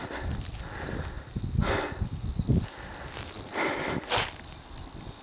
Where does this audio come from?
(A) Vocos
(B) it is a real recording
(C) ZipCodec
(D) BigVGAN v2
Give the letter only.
B